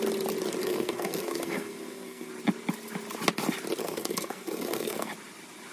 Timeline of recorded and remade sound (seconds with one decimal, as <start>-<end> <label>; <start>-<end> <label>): 0.0-0.6 recorded; 0.6-2.3 remade; 2.3-3.8 recorded; 3.8-5.1 remade; 5.1-5.7 recorded